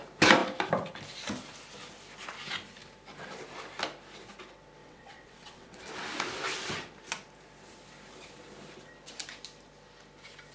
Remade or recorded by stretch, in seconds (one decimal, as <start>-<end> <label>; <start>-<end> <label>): 0.0-4.8 recorded; 4.8-5.8 remade; 5.8-10.5 recorded